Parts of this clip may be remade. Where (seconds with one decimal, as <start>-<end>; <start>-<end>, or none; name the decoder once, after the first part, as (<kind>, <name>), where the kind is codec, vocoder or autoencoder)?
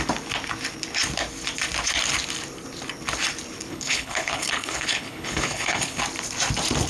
3.7-6.0 (codec, HILCodec)